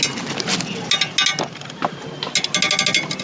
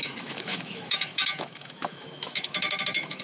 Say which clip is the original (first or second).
first